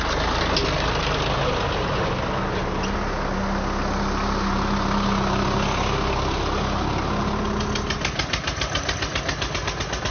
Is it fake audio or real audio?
real